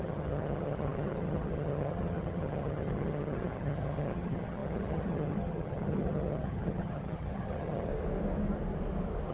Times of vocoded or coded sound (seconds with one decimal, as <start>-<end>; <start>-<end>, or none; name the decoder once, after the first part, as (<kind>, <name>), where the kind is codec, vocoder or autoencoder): 0.0-7.9 (vocoder, HiFi-GAN)